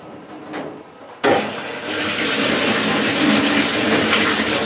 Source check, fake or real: real